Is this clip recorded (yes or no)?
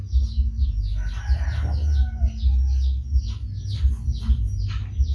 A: yes